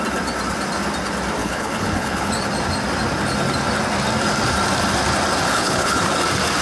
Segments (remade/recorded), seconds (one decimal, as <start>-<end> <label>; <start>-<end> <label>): 0.0-1.4 recorded; 1.4-2.3 remade; 2.3-5.5 recorded; 5.5-6.0 remade; 6.0-6.6 recorded